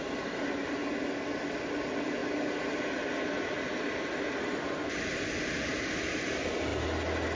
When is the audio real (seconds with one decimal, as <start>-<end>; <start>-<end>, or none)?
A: 0.0-7.4